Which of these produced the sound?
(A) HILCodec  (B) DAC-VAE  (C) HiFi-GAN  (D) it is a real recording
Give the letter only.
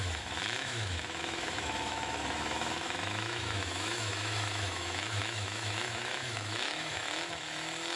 B